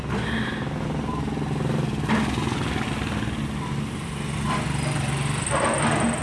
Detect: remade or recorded recorded